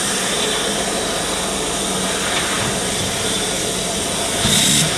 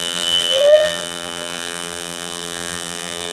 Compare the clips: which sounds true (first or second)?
first